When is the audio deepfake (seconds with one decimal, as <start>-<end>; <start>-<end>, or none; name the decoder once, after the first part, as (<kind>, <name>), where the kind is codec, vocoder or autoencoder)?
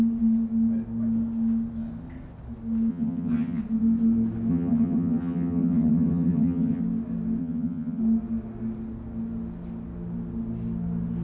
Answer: 2.9-3.6 (vocoder, HiFi-GAN); 4.5-6.8; 7.4-8.0